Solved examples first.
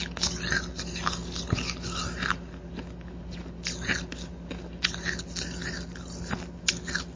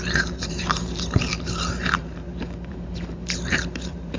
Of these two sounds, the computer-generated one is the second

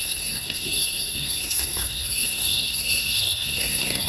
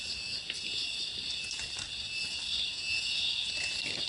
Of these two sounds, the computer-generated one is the first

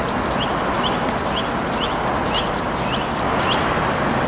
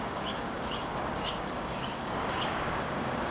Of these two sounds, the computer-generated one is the second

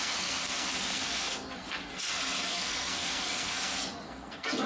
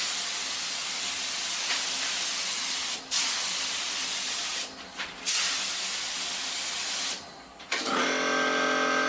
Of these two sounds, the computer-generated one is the first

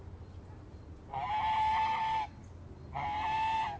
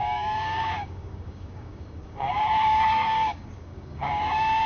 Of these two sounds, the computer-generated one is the second